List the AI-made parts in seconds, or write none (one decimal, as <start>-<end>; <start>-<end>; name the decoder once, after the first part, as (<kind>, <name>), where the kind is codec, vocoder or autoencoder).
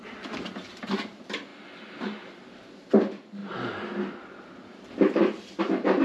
0.0-1.5 (vocoder, BigVGAN v2); 2.8-3.4; 5.6-6.0